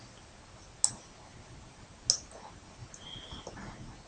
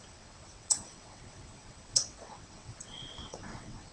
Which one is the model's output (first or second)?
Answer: second